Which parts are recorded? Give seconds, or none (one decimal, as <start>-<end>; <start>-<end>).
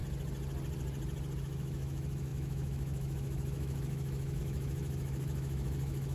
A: 0.0-1.4